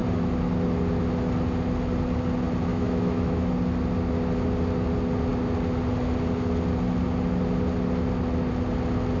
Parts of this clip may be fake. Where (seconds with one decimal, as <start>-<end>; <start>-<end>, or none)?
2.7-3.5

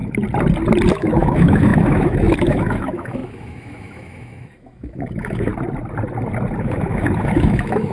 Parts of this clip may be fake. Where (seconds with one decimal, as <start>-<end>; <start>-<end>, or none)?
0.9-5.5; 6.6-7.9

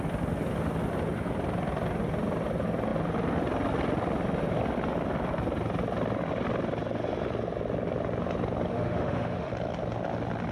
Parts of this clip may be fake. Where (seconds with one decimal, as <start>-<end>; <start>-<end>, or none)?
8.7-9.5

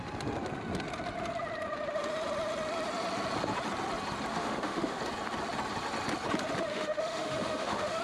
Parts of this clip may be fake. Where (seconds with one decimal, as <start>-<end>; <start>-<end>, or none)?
4.3-5.0; 6.7-8.0

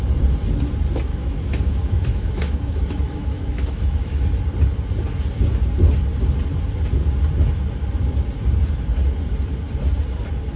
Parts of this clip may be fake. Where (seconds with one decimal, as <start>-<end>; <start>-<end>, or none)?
1.1-4.2